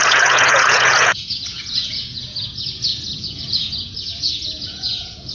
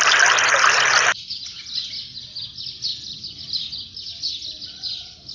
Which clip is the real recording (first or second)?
second